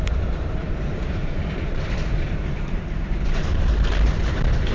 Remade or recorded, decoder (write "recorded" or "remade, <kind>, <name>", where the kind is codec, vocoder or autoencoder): remade, vocoder, BigVGAN v2